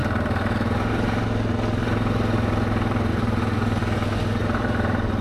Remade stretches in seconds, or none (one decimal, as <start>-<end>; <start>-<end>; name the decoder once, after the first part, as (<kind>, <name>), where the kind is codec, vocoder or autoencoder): 0.0-3.8 (vocoder, BigVGAN v2); 4.4-5.2